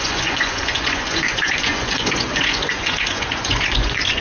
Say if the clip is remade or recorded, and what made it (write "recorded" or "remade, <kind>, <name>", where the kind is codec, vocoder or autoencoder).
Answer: remade, vocoder, Vocos